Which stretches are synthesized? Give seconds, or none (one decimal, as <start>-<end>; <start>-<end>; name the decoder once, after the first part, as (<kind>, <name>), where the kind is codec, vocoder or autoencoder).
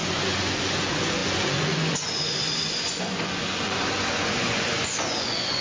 0.0-5.6 (vocoder, Vocos)